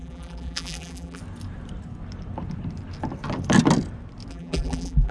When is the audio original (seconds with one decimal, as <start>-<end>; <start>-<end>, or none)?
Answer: 1.2-4.3